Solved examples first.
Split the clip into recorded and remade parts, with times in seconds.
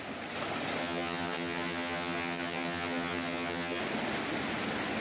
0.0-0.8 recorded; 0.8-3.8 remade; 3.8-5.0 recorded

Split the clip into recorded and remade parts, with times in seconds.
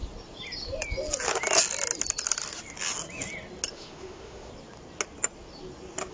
0.0-3.7 recorded; 3.7-4.5 remade; 4.5-6.1 recorded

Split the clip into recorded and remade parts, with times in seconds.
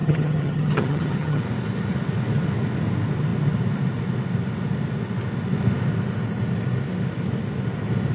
0.0-1.4 remade; 1.4-8.1 recorded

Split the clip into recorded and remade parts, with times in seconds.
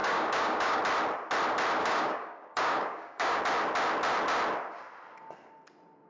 0.0-0.8 remade; 0.8-1.8 recorded; 1.8-3.4 remade; 3.4-6.1 recorded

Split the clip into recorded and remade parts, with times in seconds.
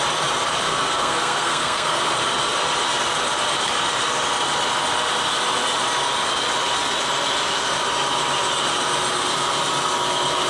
0.0-0.7 recorded; 0.7-2.1 remade; 2.1-10.5 recorded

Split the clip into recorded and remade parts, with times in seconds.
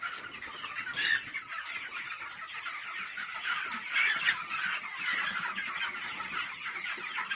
0.0-7.3 recorded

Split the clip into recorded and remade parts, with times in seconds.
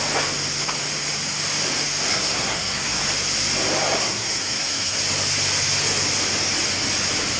0.0-2.1 recorded; 2.1-3.0 remade; 3.0-4.0 recorded; 4.0-5.0 remade; 5.0-7.4 recorded